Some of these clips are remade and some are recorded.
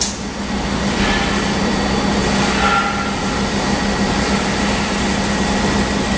recorded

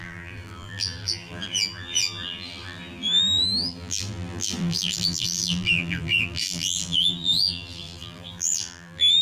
remade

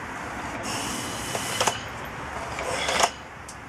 remade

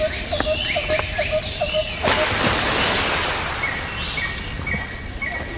recorded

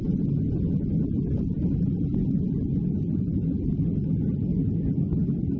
recorded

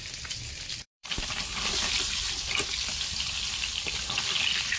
remade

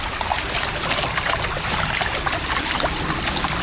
recorded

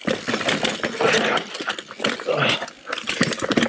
recorded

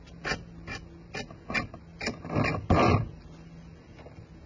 recorded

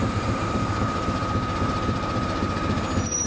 remade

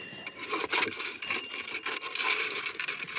remade